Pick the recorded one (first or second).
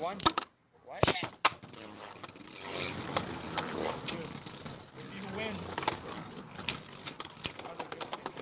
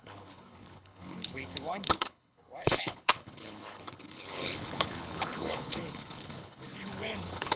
first